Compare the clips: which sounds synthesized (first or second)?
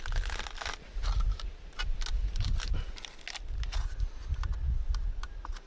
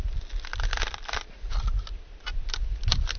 second